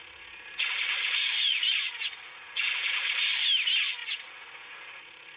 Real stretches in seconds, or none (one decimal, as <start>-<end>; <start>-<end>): 3.1-4.0

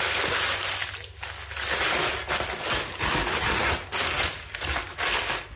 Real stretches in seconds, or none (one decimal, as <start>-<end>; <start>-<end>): 0.0-3.4; 3.8-5.6

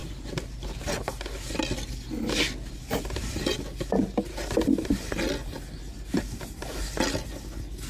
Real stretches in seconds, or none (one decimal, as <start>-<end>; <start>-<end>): 0.9-7.9

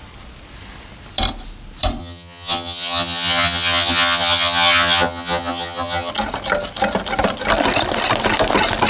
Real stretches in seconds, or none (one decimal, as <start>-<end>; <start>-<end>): 0.0-2.0; 6.1-8.9

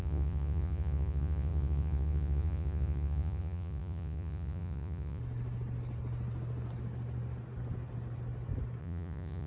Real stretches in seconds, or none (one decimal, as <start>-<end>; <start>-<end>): 5.2-8.8

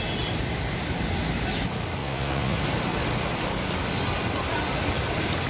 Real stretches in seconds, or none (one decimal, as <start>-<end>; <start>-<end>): 0.0-2.0; 2.6-5.5

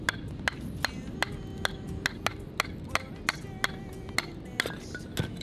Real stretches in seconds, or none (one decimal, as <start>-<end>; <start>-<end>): 0.0-5.4

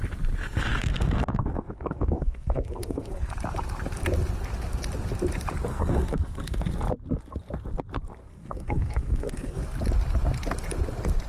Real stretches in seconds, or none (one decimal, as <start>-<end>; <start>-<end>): 0.0-0.4; 3.3-5.7; 6.7-8.2; 9.6-11.3